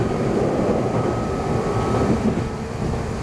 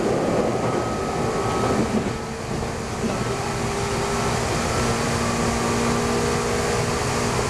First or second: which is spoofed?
first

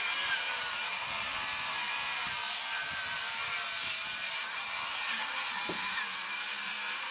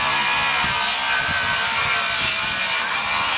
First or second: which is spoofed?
first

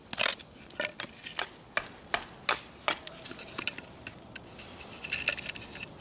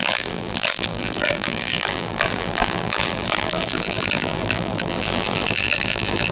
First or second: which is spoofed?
second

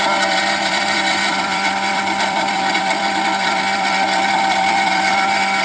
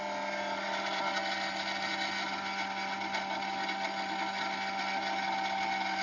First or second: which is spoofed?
first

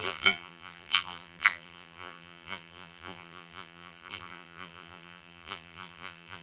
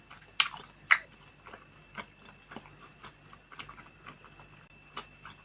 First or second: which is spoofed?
first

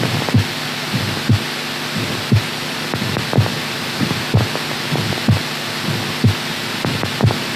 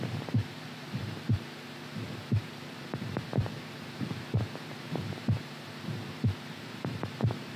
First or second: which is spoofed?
second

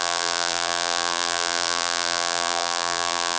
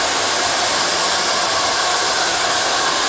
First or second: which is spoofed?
first